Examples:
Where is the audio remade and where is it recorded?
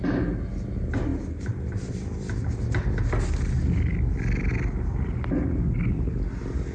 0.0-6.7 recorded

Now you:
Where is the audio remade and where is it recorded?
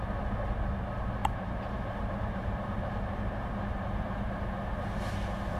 0.0-1.2 recorded; 1.2-4.3 remade; 4.3-5.6 recorded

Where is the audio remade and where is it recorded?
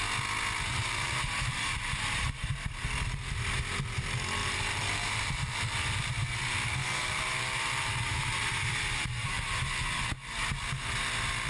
0.0-0.7 recorded; 0.7-2.4 remade; 2.4-4.4 recorded; 4.4-6.0 remade; 6.0-6.8 recorded; 6.8-9.3 remade; 9.3-11.5 recorded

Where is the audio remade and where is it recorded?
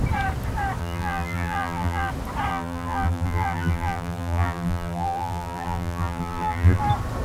0.0-0.8 recorded; 0.8-2.1 remade; 2.1-2.5 recorded; 2.5-6.8 remade; 6.8-7.2 recorded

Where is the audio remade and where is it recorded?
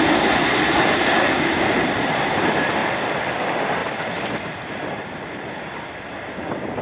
0.0-2.8 recorded; 2.8-3.4 remade; 3.4-3.8 recorded; 3.8-6.8 remade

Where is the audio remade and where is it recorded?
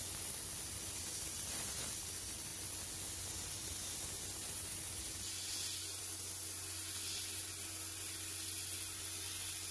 0.0-9.7 recorded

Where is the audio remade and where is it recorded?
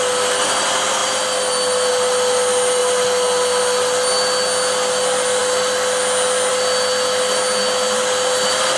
0.0-8.8 recorded